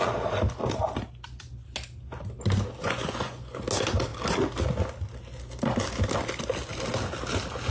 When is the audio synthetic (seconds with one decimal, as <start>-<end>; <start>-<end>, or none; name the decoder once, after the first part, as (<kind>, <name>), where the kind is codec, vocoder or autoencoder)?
2.8-3.6 (vocoder, Vocos)